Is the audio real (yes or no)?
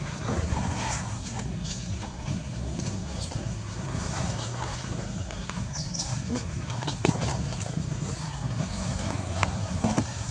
no